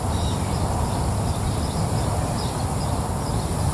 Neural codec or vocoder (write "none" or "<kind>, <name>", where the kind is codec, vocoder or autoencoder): none